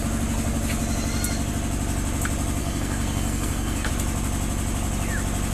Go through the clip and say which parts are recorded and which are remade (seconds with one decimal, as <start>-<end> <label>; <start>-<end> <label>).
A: 0.0-2.6 recorded; 2.6-3.9 remade; 3.9-5.5 recorded